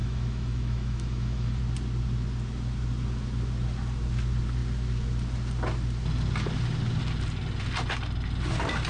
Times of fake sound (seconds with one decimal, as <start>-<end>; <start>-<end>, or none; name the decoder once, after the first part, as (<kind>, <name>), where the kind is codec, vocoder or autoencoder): 0.0-1.6 (autoencoder, DAC-VAE)

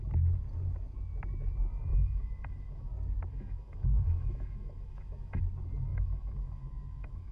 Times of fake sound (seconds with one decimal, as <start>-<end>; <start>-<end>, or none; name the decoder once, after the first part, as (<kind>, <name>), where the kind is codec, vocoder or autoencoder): 1.9-2.9 (autoencoder, DAC-VAE); 3.3-5.4; 5.9-7.3

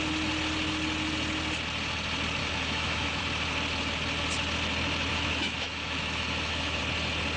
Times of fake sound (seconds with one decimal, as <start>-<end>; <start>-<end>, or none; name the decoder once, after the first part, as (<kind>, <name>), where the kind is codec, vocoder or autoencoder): 2.4-3.2 (autoencoder, DAC-VAE); 5.1-6.8

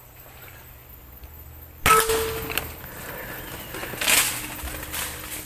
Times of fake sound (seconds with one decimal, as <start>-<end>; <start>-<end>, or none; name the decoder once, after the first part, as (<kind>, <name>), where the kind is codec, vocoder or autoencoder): none

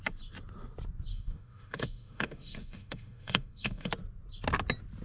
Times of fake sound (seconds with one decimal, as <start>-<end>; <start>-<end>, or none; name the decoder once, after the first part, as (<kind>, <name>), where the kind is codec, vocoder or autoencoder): 1.1-3.9 (autoencoder, DAC-VAE)

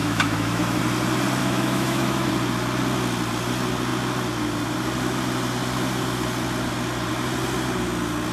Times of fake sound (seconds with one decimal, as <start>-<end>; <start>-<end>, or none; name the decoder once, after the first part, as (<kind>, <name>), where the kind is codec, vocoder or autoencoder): 0.0-0.8 (autoencoder, DAC-VAE); 1.4-2.3

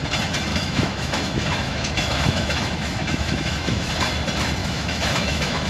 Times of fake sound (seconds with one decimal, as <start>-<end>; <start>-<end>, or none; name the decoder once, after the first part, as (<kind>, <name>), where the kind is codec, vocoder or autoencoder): 0.5-3.9 (autoencoder, DAC-VAE); 4.6-5.7

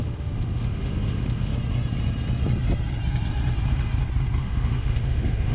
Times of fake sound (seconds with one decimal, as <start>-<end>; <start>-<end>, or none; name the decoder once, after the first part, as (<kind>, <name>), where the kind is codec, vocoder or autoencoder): 0.0-1.5 (autoencoder, DAC-VAE); 4.4-5.5